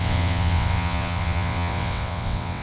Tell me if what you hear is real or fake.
fake